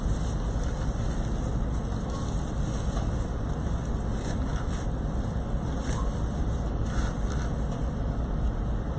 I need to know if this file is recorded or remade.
remade